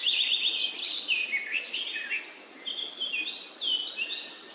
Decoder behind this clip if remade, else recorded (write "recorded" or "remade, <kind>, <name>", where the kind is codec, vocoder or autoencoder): recorded